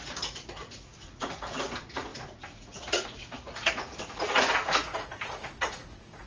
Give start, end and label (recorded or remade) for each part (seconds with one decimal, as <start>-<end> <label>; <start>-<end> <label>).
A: 0.0-6.3 remade